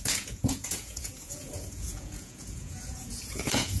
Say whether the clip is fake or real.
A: fake